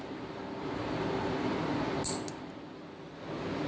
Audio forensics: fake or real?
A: real